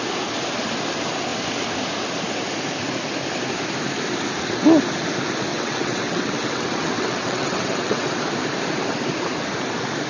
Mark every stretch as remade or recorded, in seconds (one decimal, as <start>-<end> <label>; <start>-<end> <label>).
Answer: 0.0-5.5 recorded; 5.5-8.2 remade; 8.2-10.1 recorded